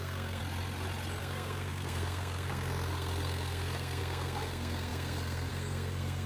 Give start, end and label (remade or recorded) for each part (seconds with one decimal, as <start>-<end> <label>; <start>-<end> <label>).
0.0-0.4 remade; 0.4-1.2 recorded; 1.2-6.3 remade